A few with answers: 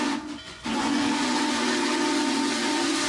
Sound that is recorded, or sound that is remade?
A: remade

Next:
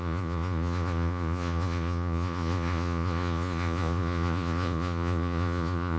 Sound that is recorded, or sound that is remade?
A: remade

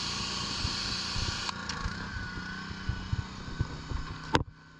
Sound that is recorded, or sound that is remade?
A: recorded